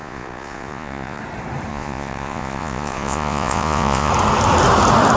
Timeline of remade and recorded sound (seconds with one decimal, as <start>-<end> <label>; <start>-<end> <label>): 0.0-1.2 remade; 1.2-1.7 recorded; 1.7-4.1 remade; 4.1-5.2 recorded